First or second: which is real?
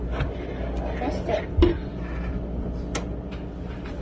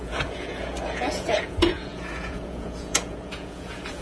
first